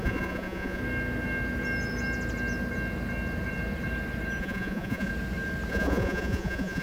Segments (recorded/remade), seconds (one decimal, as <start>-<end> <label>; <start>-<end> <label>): 0.0-0.8 remade; 0.8-4.4 recorded; 4.4-5.1 remade; 5.1-5.7 recorded; 5.7-6.8 remade